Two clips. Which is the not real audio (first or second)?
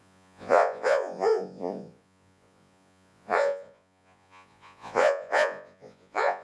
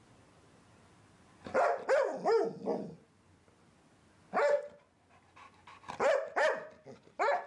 first